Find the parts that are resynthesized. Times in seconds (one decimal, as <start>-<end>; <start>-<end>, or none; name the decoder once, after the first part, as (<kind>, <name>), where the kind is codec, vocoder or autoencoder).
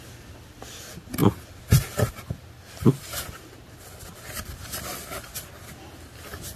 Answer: none